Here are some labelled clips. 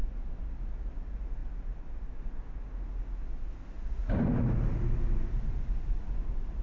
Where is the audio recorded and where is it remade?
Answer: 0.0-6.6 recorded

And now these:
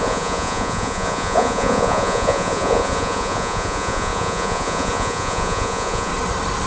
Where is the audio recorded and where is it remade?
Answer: 0.0-6.1 remade; 6.1-6.7 recorded

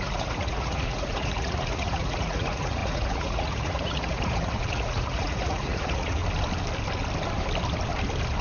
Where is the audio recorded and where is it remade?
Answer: 0.0-6.2 remade; 6.2-8.4 recorded

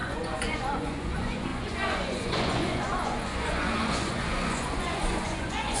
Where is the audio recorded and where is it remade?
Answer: 0.0-5.8 remade

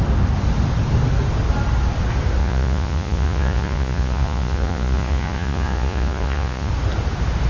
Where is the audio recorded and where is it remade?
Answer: 0.0-2.4 recorded; 2.4-6.7 remade; 6.7-7.5 recorded

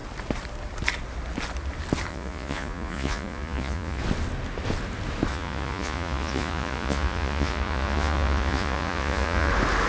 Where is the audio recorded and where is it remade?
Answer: 0.0-2.1 recorded; 2.1-4.0 remade; 4.0-5.3 recorded; 5.3-9.5 remade; 9.5-9.9 recorded

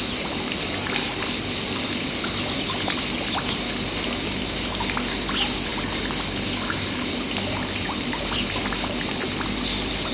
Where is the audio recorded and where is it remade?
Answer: 0.0-10.1 recorded